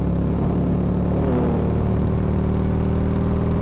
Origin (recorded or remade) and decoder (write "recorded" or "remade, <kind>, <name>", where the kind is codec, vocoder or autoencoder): recorded